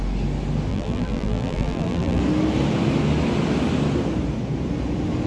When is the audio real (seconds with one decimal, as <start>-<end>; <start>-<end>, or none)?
0.0-0.7; 2.2-5.3